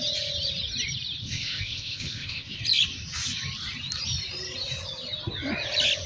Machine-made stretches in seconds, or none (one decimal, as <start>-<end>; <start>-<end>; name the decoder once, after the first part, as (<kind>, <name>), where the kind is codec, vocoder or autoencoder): 1.2-2.6 (codec, ZipCodec)